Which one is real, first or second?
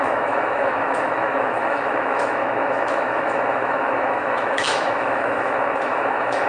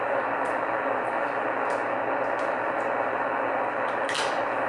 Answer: second